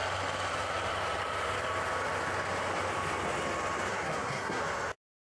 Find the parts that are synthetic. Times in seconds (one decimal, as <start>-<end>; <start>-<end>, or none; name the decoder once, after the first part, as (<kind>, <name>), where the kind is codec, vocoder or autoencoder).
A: 3.9-4.6 (codec, SNAC)